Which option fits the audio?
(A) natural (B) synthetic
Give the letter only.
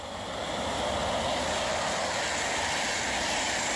A